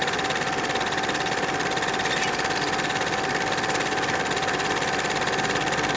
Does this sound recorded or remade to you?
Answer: recorded